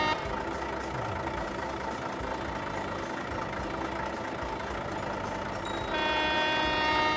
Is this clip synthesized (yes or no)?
no